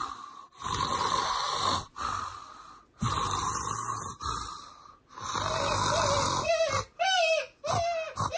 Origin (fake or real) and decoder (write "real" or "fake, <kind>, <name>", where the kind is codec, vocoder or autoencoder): real